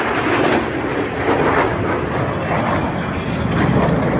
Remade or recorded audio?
recorded